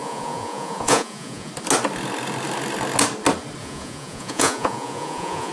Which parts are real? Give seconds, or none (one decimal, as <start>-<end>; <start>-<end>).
1.5-3.6